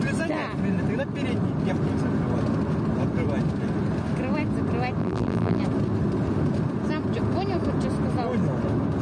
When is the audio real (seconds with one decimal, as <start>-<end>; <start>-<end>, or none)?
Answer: 0.0-5.0; 5.6-9.0